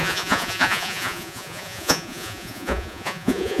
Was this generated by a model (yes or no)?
yes